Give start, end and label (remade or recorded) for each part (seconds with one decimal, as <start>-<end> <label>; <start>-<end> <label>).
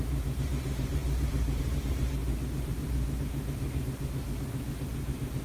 0.0-5.4 remade